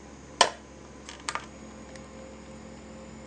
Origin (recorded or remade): recorded